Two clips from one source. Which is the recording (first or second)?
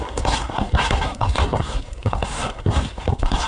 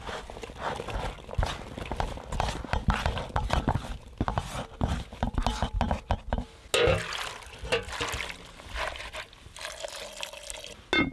second